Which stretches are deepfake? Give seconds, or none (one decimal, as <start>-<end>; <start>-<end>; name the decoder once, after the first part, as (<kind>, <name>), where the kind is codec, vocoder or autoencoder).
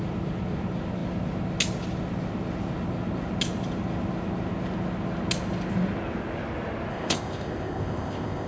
6.9-8.5 (codec, ZipCodec)